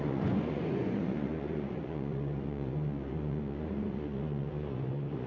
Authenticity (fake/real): fake